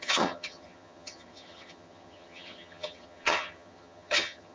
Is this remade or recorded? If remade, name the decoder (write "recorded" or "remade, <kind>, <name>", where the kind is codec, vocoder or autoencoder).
remade, vocoder, HiFi-GAN